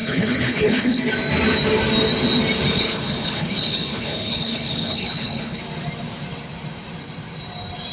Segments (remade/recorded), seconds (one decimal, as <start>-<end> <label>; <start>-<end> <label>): 0.0-1.0 remade; 1.0-2.7 recorded; 2.7-5.6 remade; 5.6-7.9 recorded